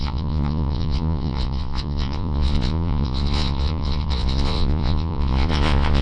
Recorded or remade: remade